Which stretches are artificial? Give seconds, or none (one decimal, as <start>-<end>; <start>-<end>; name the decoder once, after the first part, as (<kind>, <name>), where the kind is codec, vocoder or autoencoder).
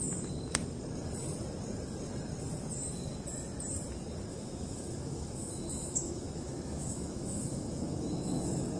4.3-8.8 (autoencoder, DAC-VAE)